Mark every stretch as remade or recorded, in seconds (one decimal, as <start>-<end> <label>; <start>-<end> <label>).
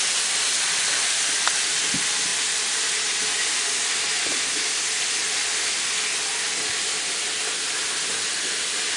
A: 0.0-9.0 recorded